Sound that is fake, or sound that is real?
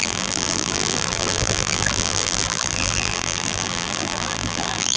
fake